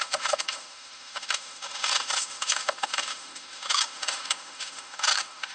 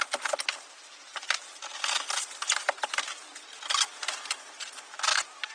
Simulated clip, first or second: first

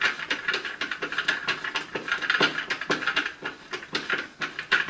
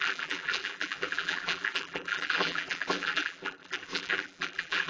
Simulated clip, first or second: second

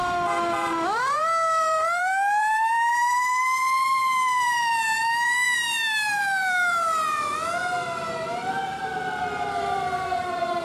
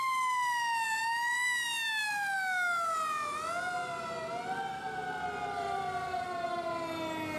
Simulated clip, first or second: first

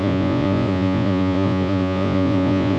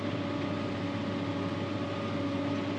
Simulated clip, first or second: first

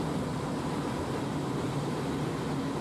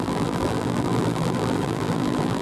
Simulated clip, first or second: second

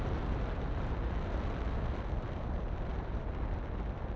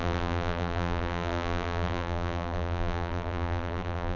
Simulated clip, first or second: second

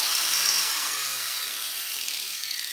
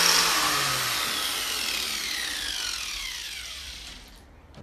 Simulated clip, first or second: first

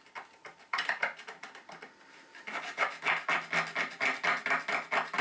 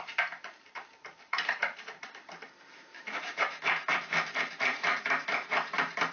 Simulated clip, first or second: second